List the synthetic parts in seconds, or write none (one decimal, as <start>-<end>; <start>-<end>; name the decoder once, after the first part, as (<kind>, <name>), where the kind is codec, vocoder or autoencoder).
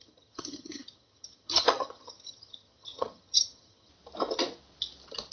0.0-3.9 (vocoder, HiFi-GAN)